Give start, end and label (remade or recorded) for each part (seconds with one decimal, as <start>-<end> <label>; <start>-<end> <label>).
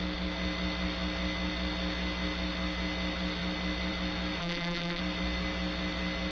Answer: 0.0-4.4 recorded; 4.4-5.0 remade; 5.0-6.3 recorded